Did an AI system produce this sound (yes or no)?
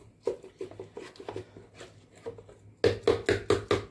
no